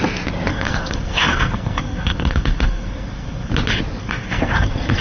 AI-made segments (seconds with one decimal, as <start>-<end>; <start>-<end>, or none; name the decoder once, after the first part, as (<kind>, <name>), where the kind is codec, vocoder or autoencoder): 0.5-3.5 (codec, SNAC); 4.0-5.0